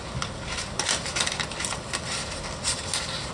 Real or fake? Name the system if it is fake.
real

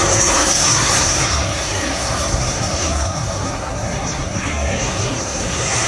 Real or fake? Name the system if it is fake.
fake, codec, SNAC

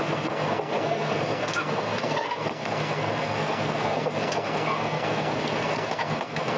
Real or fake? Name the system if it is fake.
fake, codec, SNAC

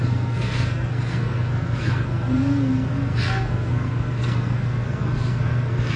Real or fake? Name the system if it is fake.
fake, codec, SNAC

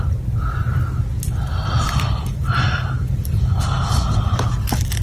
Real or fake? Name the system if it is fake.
real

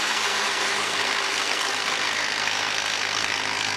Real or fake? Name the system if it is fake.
fake, codec, SNAC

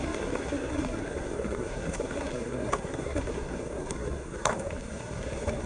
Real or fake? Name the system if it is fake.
fake, codec, SNAC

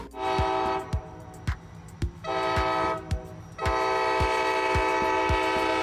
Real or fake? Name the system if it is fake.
real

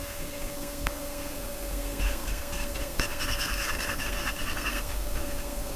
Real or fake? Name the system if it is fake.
fake, codec, SNAC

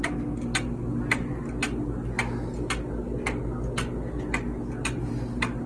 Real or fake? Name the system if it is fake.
real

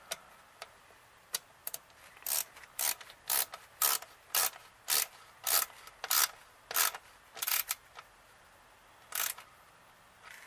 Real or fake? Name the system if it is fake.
real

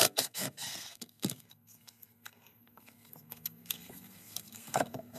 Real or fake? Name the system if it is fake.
fake, codec, SNAC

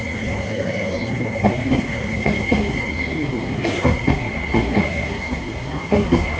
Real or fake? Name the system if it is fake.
fake, codec, SNAC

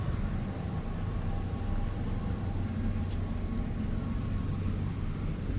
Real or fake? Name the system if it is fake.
real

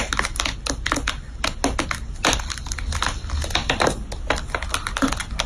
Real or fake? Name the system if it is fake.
real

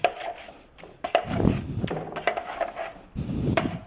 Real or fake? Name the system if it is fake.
real